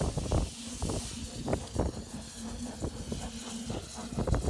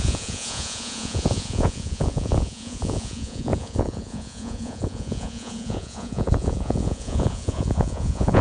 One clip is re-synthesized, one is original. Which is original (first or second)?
first